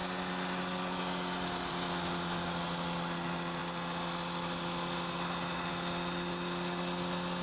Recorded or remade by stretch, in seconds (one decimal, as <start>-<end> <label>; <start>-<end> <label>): 0.0-7.4 recorded